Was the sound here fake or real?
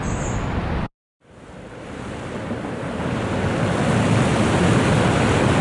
real